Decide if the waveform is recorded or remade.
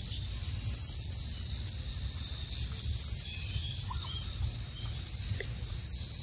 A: recorded